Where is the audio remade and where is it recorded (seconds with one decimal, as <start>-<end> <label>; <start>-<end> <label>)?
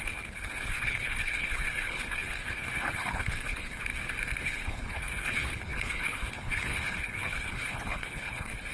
0.0-3.9 remade; 3.9-4.4 recorded; 4.4-8.7 remade